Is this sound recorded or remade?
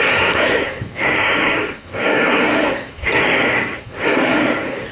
remade